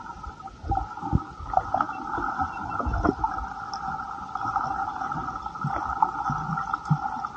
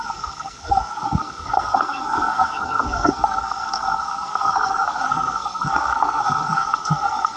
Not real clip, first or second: second